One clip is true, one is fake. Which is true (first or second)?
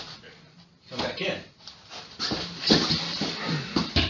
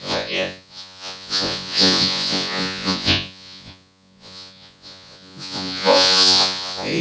first